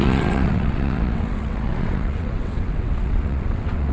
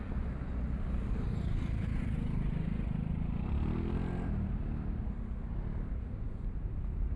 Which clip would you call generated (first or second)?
first